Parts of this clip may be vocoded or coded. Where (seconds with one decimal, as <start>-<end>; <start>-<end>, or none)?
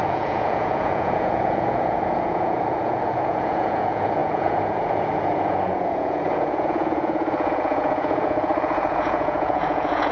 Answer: 0.0-10.1